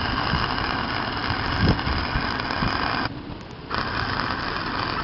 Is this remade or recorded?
recorded